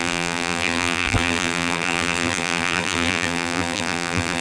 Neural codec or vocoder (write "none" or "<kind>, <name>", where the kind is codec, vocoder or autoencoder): vocoder, BigVGAN v2